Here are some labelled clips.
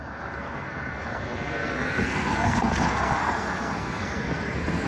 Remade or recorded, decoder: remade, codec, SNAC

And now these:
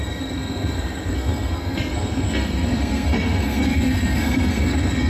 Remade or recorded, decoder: remade, codec, SNAC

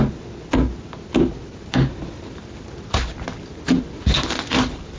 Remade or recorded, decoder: recorded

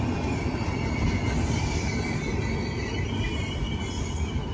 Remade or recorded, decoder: recorded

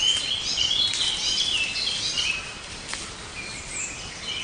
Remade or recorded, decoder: recorded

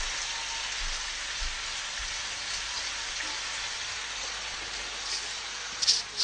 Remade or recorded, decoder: recorded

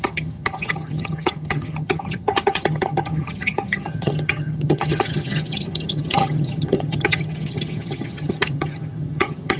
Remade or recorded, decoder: remade, vocoder, HiFi-GAN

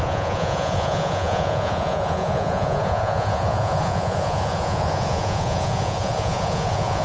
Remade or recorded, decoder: remade, vocoder, Vocos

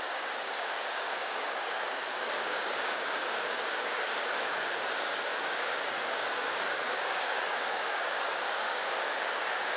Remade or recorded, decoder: remade, codec, DAC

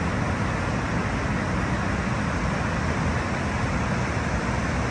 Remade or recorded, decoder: recorded